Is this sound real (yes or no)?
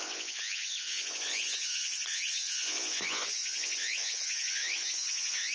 no